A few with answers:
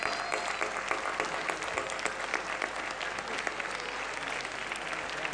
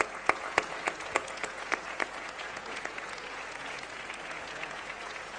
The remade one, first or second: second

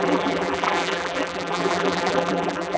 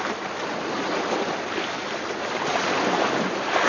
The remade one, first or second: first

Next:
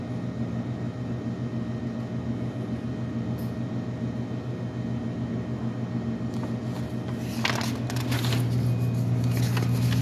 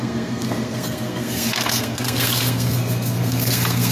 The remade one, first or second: second